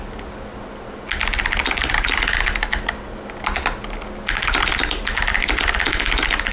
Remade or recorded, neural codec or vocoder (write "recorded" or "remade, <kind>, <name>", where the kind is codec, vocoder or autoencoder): recorded